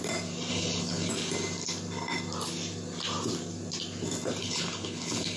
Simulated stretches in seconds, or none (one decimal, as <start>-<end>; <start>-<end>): 0.5-1.1; 4.4-5.4